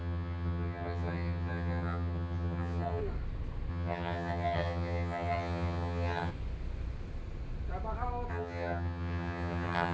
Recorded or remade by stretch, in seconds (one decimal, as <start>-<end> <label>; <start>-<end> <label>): 0.0-3.0 remade; 3.0-3.7 recorded; 3.7-6.3 remade; 6.3-8.3 recorded; 8.3-9.9 remade